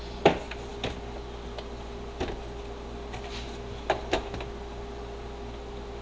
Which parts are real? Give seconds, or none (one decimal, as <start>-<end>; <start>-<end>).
0.0-6.0